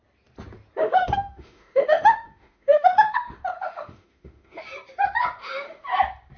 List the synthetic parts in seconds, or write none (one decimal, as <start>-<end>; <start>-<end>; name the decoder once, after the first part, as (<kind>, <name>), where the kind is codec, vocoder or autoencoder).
0.8-4.6 (autoencoder, DAC-VAE); 5.4-5.9